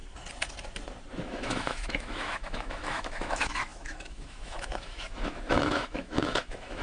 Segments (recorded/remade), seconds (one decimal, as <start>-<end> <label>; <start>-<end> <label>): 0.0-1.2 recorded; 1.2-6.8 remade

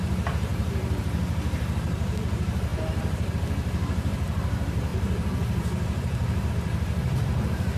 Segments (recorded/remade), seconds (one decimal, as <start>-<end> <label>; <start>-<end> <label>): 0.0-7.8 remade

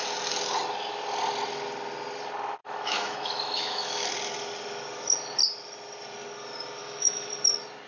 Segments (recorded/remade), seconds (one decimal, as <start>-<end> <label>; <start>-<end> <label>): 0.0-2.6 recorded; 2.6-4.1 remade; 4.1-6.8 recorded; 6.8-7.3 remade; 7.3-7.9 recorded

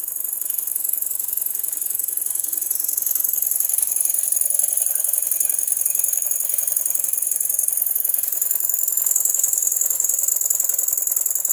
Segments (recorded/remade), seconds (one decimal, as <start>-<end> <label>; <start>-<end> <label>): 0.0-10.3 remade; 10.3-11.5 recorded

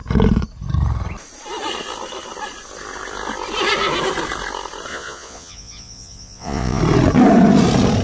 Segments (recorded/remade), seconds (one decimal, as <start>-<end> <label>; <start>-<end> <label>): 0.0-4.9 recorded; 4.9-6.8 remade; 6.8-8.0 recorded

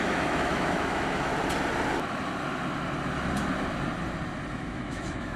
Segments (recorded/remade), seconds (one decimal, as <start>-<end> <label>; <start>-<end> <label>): 0.0-1.3 remade; 1.3-4.5 recorded; 4.5-5.4 remade

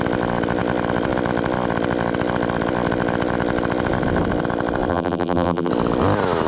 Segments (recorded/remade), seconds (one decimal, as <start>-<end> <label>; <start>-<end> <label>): 0.0-4.9 recorded; 4.9-5.7 remade; 5.7-6.5 recorded